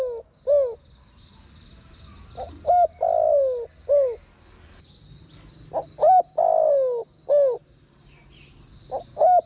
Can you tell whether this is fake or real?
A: real